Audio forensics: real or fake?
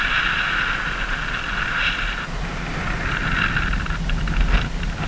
real